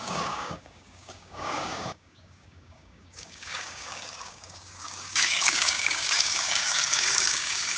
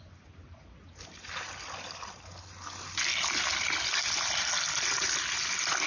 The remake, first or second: first